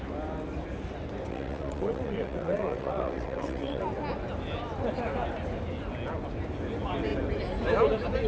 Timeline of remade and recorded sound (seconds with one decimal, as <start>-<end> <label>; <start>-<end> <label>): 0.0-1.3 recorded; 1.3-3.8 remade; 3.8-8.3 recorded